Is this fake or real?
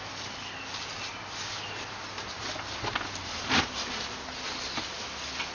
real